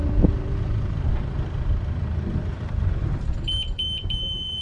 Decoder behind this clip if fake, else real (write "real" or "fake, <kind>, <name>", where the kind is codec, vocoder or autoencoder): fake, vocoder, BigVGAN v2